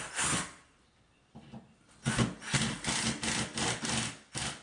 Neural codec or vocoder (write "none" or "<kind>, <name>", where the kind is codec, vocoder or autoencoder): none